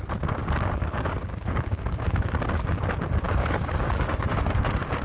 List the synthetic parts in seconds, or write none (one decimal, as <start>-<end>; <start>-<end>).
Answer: 0.4-2.2; 3.4-5.0